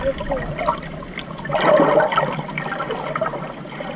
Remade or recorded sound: recorded